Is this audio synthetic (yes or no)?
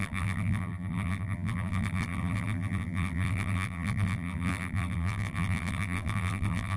yes